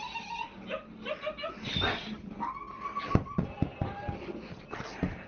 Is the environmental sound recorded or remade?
recorded